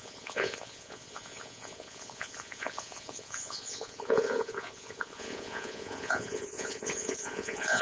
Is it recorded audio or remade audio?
remade